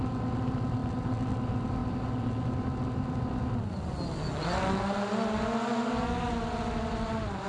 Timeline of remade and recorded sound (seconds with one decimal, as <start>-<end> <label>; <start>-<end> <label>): 0.0-7.5 recorded